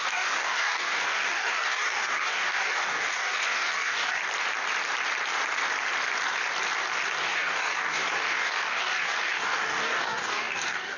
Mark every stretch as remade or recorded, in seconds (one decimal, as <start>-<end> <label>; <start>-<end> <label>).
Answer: 0.0-4.2 remade; 4.2-7.2 recorded; 7.2-11.0 remade